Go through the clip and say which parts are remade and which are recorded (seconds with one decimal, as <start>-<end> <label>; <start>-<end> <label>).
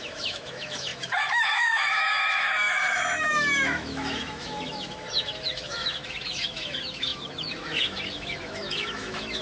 0.0-9.4 remade